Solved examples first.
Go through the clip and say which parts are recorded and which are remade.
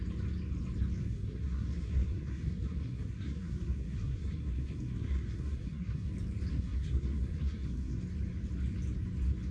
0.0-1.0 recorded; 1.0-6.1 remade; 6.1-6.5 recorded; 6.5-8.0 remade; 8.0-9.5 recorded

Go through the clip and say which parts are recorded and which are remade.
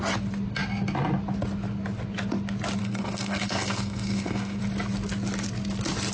0.0-2.8 recorded; 2.8-4.6 remade; 4.6-6.1 recorded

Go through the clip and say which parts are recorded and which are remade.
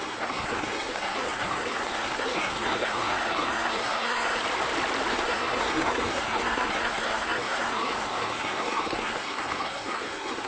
0.0-4.4 remade; 4.4-5.1 recorded; 5.1-10.5 remade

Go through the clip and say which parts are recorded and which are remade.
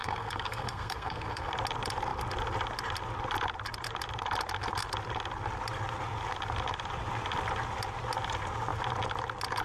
0.0-1.5 remade; 1.5-9.6 recorded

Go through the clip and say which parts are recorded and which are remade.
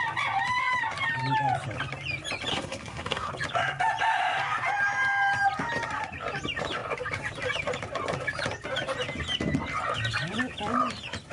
0.0-2.5 recorded; 2.5-3.3 remade; 3.3-11.3 recorded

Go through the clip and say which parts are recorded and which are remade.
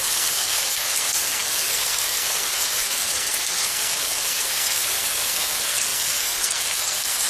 0.0-7.3 remade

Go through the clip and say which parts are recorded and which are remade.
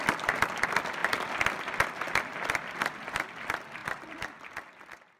0.0-5.2 recorded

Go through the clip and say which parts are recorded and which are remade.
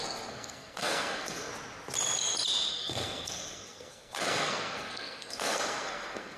0.0-1.5 remade; 1.5-2.7 recorded; 2.7-6.4 remade